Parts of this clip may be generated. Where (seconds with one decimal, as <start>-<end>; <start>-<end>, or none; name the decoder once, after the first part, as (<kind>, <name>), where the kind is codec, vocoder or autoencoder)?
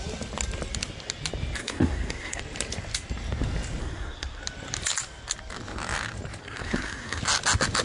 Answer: 1.6-2.4 (codec, SNAC); 3.8-4.4; 6.4-7.2